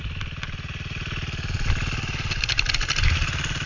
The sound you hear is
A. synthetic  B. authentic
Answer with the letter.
B